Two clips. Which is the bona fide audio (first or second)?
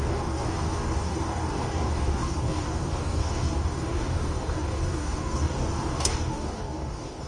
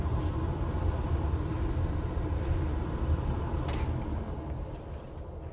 second